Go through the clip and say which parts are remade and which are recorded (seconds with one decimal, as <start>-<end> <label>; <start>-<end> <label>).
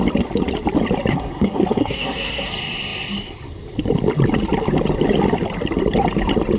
0.0-1.1 recorded; 1.1-2.5 remade; 2.5-6.6 recorded